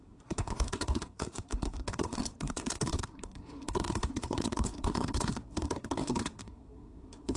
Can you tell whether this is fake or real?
fake